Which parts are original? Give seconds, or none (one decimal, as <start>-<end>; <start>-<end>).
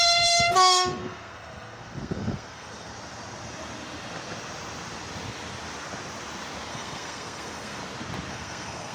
2.9-6.7; 7.8-8.3